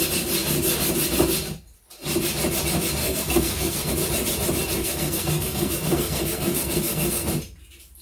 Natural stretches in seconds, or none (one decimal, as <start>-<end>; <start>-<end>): 0.0-3.0; 3.9-4.8; 7.3-8.0